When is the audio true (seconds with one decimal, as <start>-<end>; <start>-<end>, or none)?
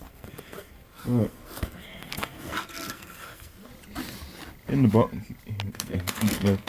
3.7-5.7